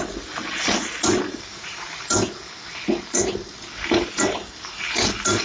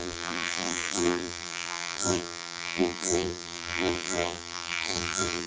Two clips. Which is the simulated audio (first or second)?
second